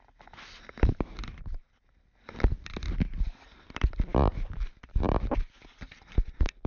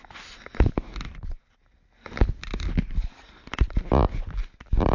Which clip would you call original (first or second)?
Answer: second